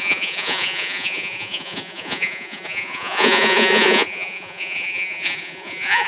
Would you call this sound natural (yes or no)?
no